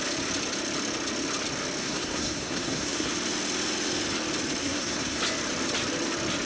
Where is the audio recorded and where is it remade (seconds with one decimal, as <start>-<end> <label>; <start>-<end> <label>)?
0.0-1.8 recorded; 1.8-3.1 remade; 3.1-4.6 recorded; 4.6-5.2 remade; 5.2-6.5 recorded